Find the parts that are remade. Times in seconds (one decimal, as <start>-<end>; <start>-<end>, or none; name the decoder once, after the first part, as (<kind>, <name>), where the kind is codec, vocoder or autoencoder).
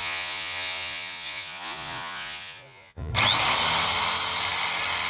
0.0-3.1 (vocoder, Vocos)